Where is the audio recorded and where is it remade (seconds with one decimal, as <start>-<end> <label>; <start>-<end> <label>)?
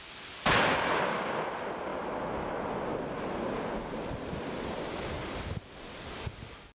0.0-6.7 recorded